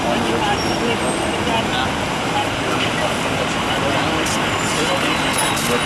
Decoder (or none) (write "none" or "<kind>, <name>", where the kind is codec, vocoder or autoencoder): none